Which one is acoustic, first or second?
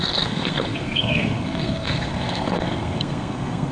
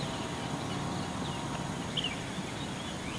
second